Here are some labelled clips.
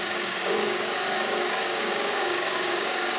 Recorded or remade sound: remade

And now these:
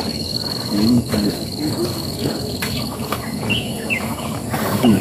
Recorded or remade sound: remade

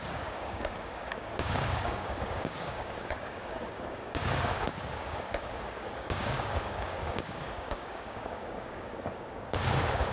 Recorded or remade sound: remade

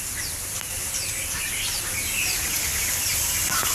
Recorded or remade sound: recorded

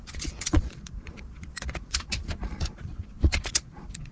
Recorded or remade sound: remade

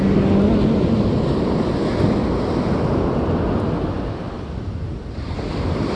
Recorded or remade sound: recorded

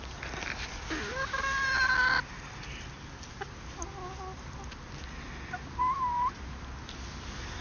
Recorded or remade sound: recorded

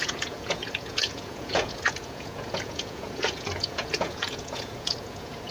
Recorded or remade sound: remade